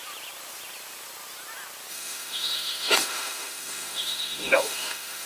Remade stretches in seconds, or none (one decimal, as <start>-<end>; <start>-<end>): 1.9-5.3